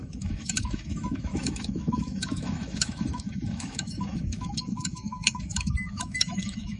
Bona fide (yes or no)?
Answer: no